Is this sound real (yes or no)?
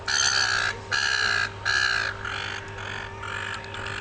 yes